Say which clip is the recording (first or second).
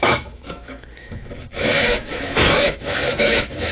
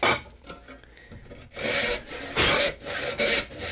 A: second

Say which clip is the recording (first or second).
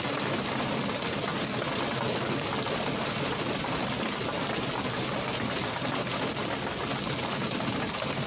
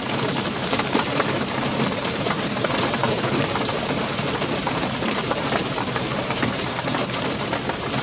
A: first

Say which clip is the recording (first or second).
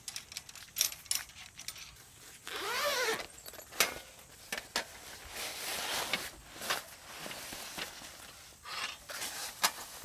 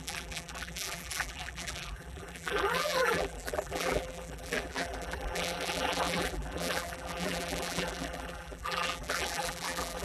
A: first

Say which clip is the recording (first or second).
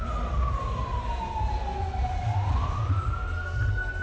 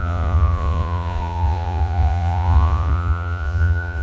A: first